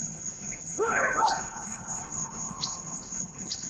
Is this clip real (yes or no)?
no